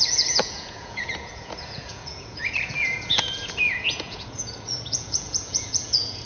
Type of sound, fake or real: fake